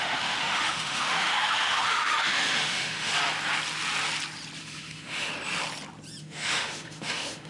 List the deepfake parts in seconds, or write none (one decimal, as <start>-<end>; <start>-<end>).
0.0-3.1; 4.6-5.3; 6.2-7.5